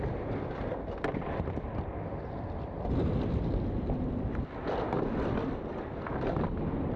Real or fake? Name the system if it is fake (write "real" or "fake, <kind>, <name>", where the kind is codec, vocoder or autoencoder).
real